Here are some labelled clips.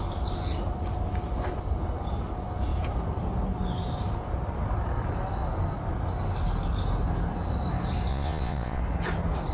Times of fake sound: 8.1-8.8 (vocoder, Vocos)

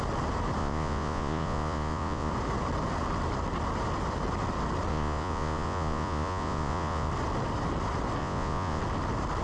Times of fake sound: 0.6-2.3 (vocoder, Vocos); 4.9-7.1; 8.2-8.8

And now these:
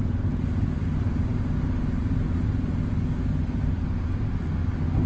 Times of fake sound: none